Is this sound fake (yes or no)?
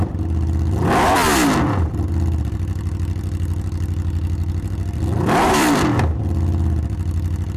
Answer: yes